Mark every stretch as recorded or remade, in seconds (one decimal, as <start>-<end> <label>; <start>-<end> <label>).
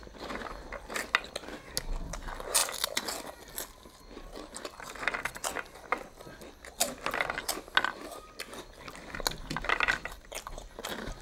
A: 0.0-11.2 recorded